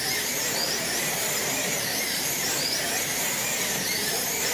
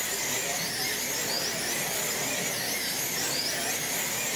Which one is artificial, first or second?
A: first